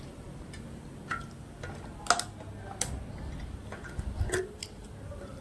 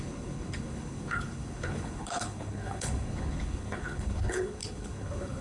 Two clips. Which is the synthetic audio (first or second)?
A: second